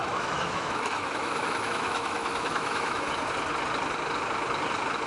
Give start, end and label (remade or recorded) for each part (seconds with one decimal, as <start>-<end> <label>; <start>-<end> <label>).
0.0-3.1 remade; 3.1-5.1 recorded